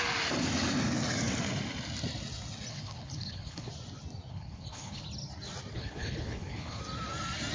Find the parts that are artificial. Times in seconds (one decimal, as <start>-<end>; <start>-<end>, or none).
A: 2.7-3.7; 4.3-5.0; 5.7-6.8